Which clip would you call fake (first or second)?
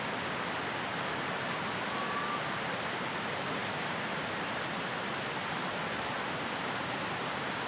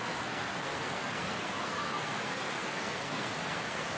second